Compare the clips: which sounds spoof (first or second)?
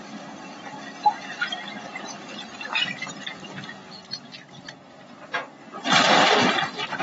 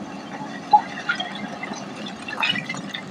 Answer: second